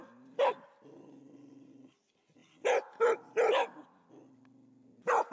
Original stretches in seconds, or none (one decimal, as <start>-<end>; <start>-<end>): 0.0-5.3